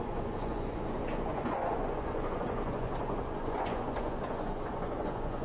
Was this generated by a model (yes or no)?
yes